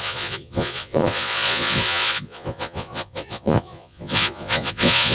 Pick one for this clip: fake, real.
fake